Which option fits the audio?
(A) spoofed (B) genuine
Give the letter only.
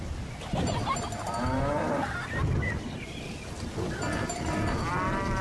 B